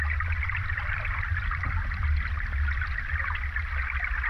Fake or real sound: real